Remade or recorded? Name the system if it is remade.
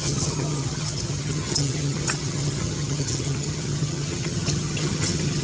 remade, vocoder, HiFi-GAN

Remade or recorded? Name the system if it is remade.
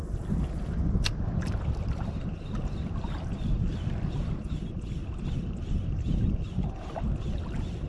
recorded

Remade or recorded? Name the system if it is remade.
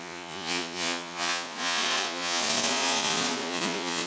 remade, vocoder, Vocos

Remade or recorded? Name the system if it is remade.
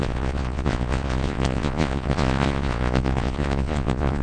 remade, vocoder, Vocos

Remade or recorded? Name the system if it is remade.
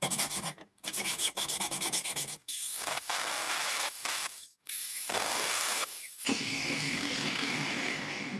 remade, codec, DAC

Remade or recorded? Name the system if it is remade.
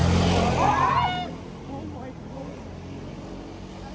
recorded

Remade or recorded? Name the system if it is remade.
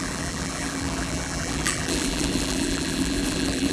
remade, vocoder, BigVGAN v2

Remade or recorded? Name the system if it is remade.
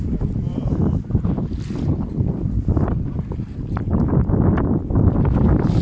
remade, vocoder, BigVGAN v2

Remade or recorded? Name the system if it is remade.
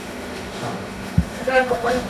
remade, autoencoder, DAC-VAE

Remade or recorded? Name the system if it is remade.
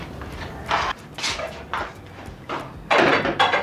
recorded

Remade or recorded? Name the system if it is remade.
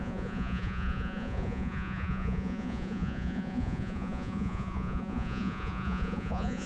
remade, vocoder, Vocos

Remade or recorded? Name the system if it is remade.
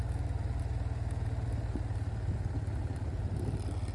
recorded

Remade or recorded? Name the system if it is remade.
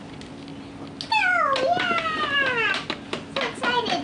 recorded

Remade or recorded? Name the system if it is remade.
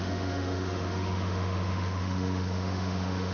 remade, autoencoder, DAC-VAE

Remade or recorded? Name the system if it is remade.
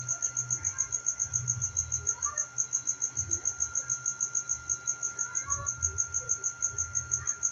recorded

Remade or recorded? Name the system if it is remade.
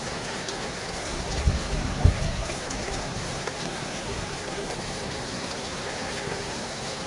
remade, codec, SNAC